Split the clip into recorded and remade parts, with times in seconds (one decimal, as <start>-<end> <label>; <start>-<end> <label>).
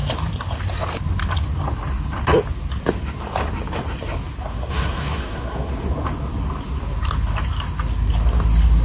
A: 0.0-4.5 recorded; 4.5-5.7 remade; 5.7-8.8 recorded